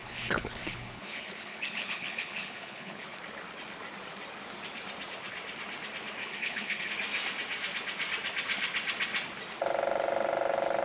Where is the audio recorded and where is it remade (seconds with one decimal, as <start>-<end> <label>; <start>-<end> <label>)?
0.0-3.2 remade; 3.2-6.2 recorded; 6.2-6.9 remade; 6.9-10.8 recorded